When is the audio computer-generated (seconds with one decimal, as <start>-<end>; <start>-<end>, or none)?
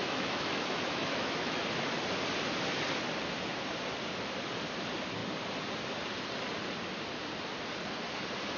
0.0-1.6